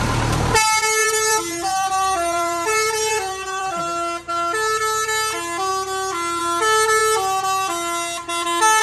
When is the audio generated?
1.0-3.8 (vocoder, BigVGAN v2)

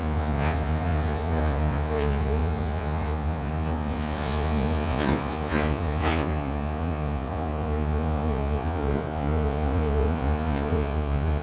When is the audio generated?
0.0-11.4 (vocoder, Vocos)

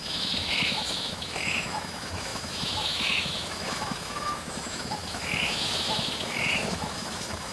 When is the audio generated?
0.0-7.5 (autoencoder, DAC-VAE)

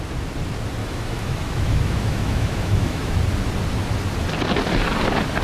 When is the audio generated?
0.8-3.2 (autoencoder, DAC-VAE)